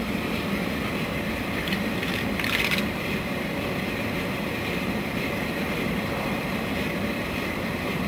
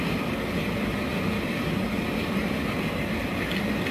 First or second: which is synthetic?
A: first